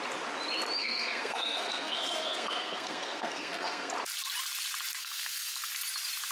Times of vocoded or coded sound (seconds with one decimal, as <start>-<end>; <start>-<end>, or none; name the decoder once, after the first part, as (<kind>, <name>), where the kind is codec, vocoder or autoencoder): 0.8-3.9 (codec, SNAC); 5.0-5.7